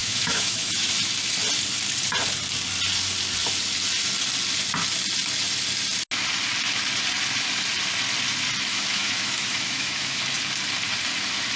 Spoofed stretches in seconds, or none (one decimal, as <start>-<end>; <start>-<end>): 0.0-0.9; 8.7-10.2

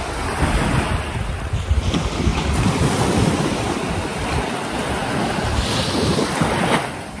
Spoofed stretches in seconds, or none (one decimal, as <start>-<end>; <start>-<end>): none

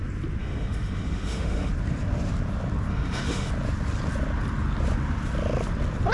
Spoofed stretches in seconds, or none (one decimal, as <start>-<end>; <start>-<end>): 0.4-1.7; 2.9-3.5

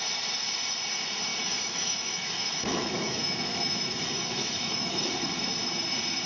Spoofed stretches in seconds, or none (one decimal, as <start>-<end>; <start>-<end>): 1.3-5.1

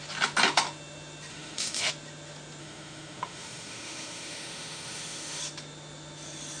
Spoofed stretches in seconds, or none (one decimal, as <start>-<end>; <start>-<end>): 1.3-1.9; 2.6-5.4